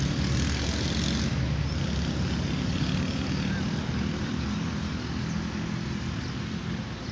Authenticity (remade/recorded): recorded